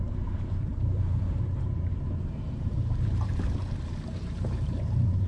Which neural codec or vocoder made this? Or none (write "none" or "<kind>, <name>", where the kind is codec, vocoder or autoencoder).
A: vocoder, BigVGAN v2